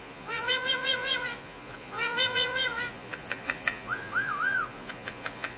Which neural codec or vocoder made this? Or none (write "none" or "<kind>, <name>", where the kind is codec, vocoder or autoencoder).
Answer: vocoder, Vocos